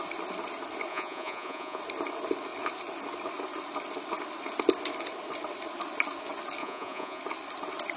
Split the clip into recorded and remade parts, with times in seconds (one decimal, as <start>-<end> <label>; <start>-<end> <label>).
0.0-0.9 recorded; 0.9-1.8 remade; 1.8-6.6 recorded; 6.6-7.2 remade; 7.2-8.0 recorded